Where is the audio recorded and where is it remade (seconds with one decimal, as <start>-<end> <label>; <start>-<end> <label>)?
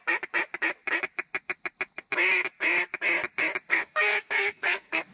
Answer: 0.0-3.7 recorded; 3.7-5.1 remade